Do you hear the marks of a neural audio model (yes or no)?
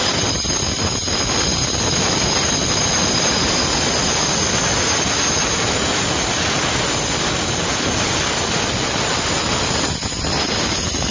no